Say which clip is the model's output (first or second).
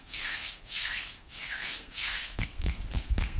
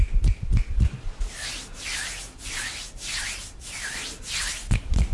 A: first